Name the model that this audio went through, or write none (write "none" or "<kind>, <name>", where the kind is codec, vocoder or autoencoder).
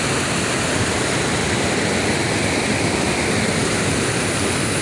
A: none